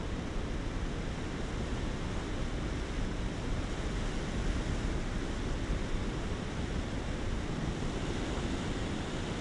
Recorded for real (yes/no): yes